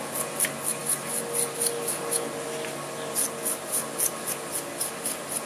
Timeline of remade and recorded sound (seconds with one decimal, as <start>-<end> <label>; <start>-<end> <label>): 0.0-5.5 recorded